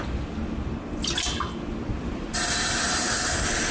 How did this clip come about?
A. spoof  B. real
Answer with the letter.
B